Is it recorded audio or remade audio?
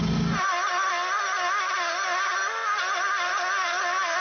recorded